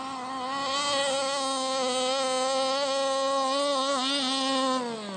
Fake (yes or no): no